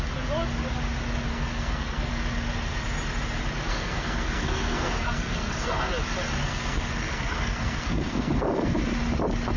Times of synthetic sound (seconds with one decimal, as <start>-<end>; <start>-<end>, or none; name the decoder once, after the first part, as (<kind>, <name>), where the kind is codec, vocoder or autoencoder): 1.3-2.1 (codec, SNAC); 3.7-5.9; 6.4-8.8